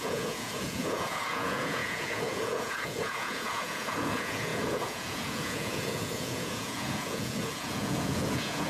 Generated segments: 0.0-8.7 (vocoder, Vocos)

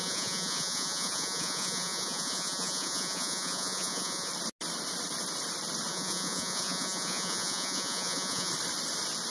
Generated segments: 0.0-4.3 (vocoder, Vocos); 5.9-8.5

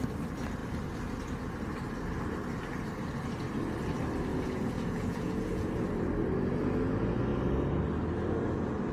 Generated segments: 4.3-5.7 (vocoder, Vocos)